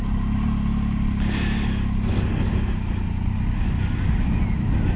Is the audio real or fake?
real